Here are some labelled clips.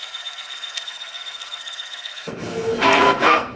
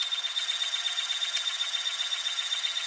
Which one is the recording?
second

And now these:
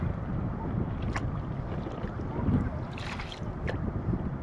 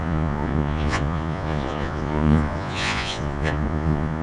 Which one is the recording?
first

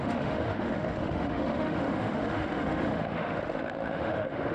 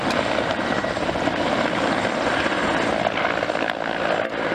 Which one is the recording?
second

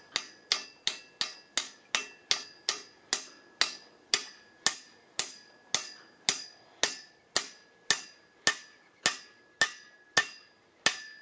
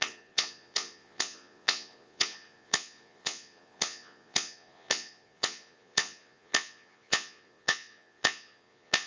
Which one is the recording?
first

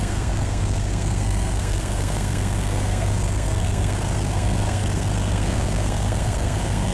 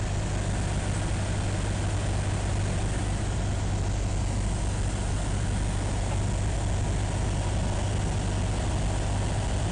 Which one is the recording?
second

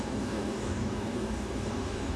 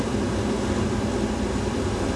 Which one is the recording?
second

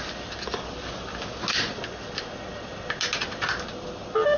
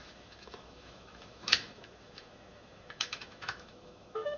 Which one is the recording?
first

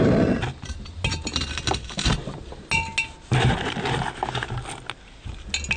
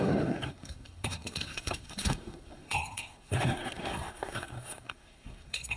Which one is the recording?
first